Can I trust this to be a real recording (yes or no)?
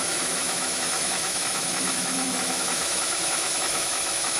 no